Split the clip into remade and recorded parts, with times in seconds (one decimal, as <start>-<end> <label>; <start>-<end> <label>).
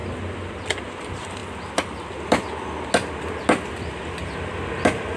0.0-5.2 recorded